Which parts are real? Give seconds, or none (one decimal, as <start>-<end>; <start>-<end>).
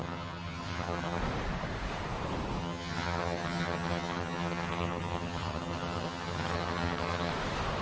1.2-2.6; 7.3-7.8